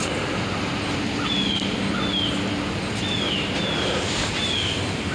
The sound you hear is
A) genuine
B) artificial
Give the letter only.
A